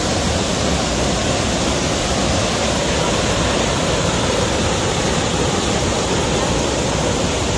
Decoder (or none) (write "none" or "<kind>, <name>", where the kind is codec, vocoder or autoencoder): none